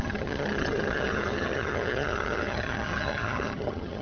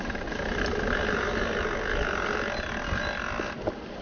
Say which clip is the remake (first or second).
first